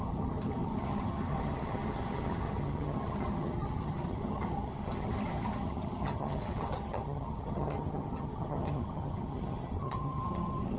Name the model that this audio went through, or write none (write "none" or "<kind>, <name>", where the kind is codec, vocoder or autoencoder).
vocoder, HiFi-GAN